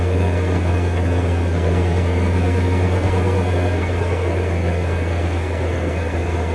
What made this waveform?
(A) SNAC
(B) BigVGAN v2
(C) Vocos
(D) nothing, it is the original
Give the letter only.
A